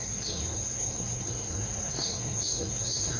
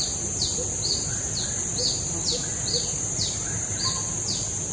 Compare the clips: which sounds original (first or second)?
second